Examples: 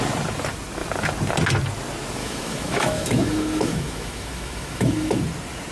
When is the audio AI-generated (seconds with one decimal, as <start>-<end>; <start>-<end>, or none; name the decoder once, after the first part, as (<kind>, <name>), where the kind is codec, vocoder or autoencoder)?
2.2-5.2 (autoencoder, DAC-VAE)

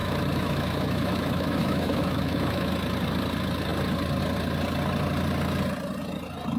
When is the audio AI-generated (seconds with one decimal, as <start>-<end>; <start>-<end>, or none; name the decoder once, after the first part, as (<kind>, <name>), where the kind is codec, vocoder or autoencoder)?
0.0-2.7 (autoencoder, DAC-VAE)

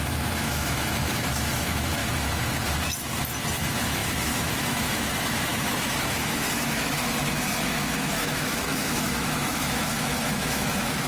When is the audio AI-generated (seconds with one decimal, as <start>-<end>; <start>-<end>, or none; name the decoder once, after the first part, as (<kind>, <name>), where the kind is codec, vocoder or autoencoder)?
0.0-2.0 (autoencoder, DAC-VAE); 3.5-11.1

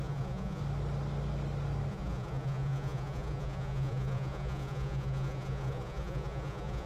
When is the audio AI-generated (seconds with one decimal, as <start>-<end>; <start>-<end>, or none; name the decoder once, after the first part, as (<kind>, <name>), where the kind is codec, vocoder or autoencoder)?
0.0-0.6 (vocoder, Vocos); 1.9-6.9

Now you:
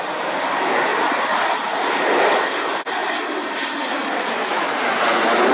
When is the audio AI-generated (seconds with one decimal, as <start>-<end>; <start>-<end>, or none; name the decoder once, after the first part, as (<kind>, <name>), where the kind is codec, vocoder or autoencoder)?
none

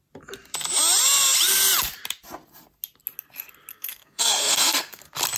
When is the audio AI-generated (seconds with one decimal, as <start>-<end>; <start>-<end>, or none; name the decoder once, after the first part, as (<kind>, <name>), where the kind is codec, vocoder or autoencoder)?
3.7-5.0 (codec, SNAC)

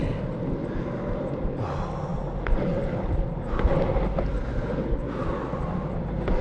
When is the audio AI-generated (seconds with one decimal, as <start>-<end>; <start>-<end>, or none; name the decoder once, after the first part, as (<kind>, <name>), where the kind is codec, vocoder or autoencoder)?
none

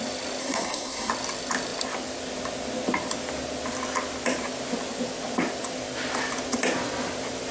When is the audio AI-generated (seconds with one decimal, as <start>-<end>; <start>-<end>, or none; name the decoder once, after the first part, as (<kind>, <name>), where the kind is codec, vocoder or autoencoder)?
0.4-1.1 (codec, SNAC)